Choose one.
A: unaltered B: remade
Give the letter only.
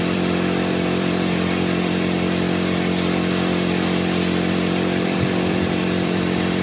B